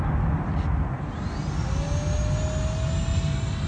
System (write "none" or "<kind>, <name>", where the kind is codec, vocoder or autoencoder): none